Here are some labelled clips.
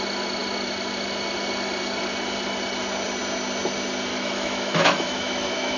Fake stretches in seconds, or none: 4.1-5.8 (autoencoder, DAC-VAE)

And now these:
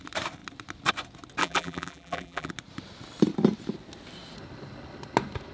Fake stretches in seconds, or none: 1.4-2.5 (vocoder, BigVGAN v2)

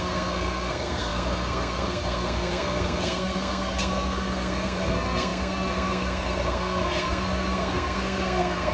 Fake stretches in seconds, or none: 0.0-8.7 (codec, SNAC)